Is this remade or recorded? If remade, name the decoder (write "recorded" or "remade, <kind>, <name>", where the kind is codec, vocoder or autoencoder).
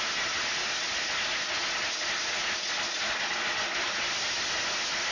recorded